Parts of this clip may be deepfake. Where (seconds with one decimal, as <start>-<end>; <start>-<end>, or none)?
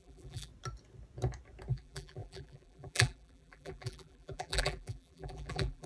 0.0-0.5; 1.7-5.9